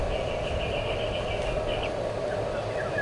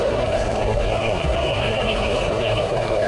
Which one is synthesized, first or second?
second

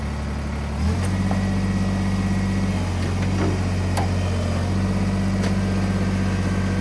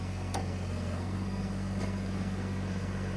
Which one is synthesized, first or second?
second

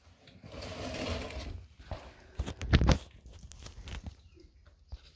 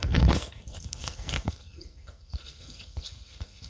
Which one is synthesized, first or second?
second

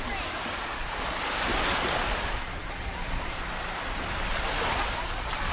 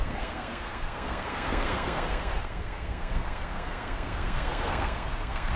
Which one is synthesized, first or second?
second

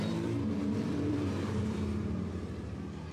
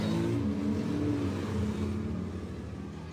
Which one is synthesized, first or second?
first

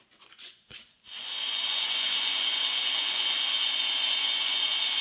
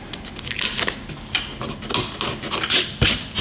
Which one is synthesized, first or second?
first